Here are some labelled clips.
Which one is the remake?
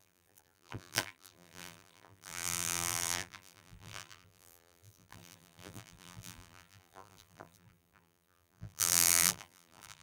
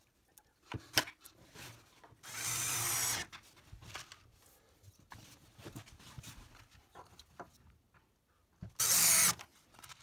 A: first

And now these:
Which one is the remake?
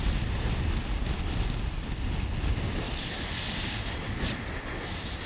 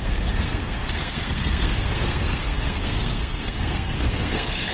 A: second